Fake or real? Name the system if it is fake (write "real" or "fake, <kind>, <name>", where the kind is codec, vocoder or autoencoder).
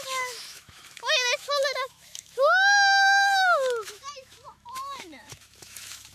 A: fake, autoencoder, DAC-VAE